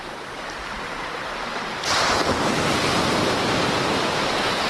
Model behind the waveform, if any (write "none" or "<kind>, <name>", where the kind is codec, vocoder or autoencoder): none